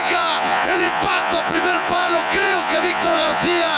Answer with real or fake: fake